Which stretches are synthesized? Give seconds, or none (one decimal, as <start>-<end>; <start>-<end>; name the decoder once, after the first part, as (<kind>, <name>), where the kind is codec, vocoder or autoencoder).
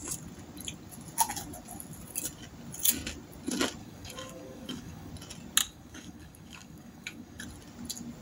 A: 3.8-5.1 (codec, DAC); 5.6-7.4